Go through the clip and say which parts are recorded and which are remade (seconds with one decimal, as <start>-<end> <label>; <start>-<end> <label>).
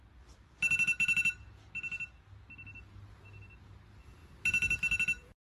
0.0-5.5 recorded